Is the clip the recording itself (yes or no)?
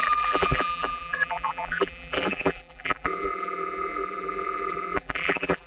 no